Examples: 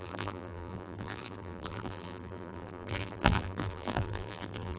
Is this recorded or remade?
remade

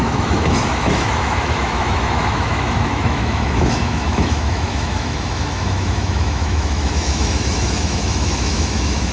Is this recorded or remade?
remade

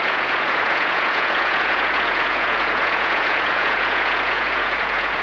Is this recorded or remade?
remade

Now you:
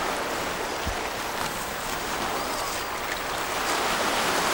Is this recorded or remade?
recorded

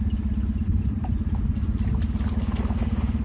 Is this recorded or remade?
recorded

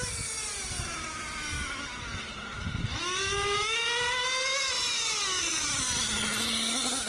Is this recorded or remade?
recorded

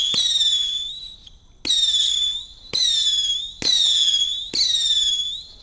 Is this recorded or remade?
recorded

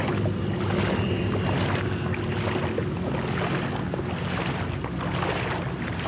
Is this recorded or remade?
recorded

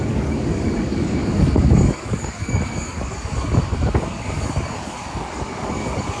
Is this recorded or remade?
remade